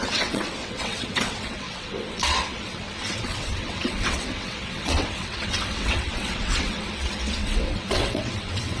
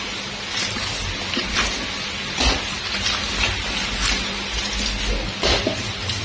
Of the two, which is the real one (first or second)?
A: second